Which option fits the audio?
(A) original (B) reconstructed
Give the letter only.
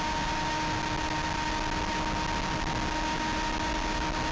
A